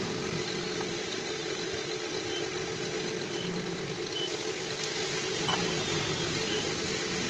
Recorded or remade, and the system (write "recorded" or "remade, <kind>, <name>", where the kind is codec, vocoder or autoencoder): recorded